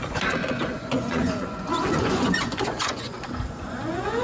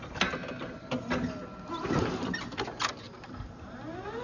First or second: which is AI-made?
first